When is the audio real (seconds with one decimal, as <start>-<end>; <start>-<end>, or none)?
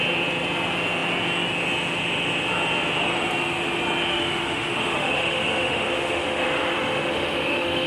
0.0-4.1